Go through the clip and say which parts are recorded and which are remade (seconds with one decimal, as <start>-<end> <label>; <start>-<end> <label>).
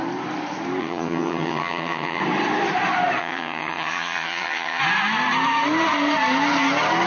0.0-0.8 recorded; 0.8-2.2 remade; 2.2-3.2 recorded; 3.2-4.8 remade; 4.8-7.1 recorded